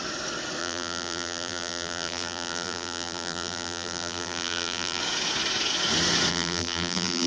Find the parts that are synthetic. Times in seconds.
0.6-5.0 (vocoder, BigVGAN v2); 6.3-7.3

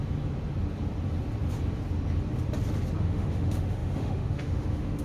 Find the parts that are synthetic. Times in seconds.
3.0-5.0 (autoencoder, DAC-VAE)

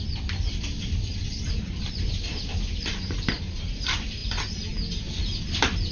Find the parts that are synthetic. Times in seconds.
none